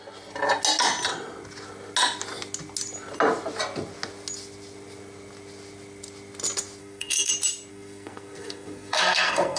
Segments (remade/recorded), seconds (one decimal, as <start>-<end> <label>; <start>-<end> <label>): 0.0-6.8 recorded; 6.8-7.3 remade; 7.3-7.7 recorded; 7.7-9.6 remade